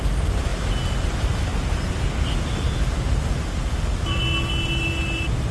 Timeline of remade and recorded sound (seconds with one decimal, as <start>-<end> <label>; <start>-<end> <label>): 0.0-5.5 recorded